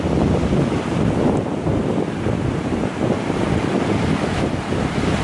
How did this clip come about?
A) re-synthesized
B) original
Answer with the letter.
B